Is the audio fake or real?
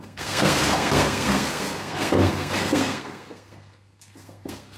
fake